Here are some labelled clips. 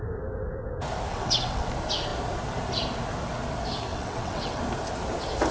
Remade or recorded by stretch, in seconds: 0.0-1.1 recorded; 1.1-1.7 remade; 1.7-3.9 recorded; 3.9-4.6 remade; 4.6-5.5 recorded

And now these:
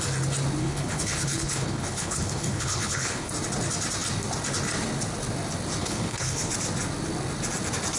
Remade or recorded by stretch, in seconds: 0.0-0.6 recorded; 0.6-3.3 remade; 3.3-5.8 recorded; 5.8-6.5 remade; 6.5-8.0 recorded

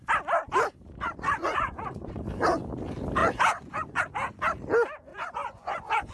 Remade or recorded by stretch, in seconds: 0.0-1.4 recorded; 1.4-2.2 remade; 2.2-3.2 recorded; 3.2-4.0 remade; 4.0-5.1 recorded; 5.1-6.1 remade

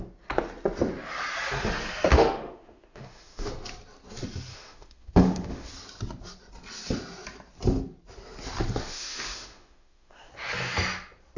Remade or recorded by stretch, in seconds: 0.0-2.1 recorded; 2.1-3.5 remade; 3.5-4.5 recorded; 4.5-5.7 remade; 5.7-8.8 recorded; 8.8-10.3 remade; 10.3-11.4 recorded

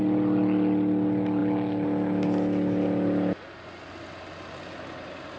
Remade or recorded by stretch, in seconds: 0.0-5.4 recorded

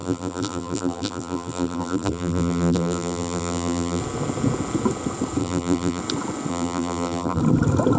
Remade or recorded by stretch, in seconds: 0.0-4.0 remade; 4.0-5.4 recorded; 5.4-6.0 remade; 6.0-6.5 recorded; 6.5-7.4 remade; 7.4-8.0 recorded